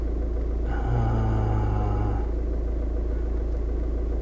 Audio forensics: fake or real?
real